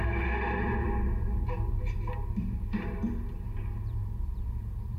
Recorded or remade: remade